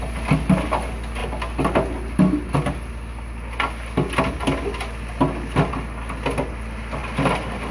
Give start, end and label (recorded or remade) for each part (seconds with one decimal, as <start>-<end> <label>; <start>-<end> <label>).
0.0-7.7 recorded